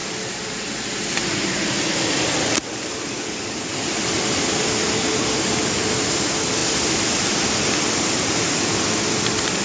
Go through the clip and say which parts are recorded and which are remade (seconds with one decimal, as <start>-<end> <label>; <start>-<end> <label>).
0.0-1.8 recorded; 1.8-9.6 remade